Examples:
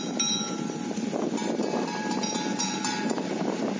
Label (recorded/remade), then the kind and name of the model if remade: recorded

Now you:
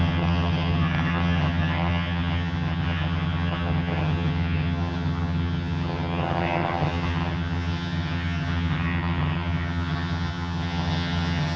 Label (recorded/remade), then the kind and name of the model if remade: remade, vocoder, HiFi-GAN